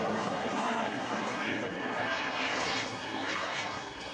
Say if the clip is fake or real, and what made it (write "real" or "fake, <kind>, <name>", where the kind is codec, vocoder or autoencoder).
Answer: fake, codec, SNAC